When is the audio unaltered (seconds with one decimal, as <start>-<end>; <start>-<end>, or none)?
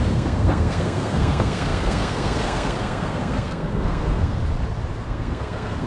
4.4-5.0